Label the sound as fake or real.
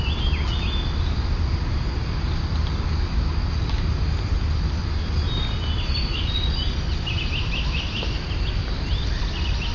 real